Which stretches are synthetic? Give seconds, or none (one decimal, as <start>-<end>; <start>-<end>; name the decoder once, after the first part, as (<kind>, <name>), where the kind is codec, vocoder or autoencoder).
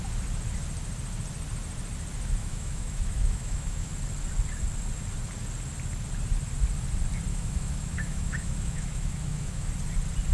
2.4-3.9 (autoencoder, DAC-VAE); 7.3-9.7